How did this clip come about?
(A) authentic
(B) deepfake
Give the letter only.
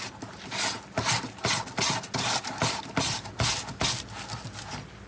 A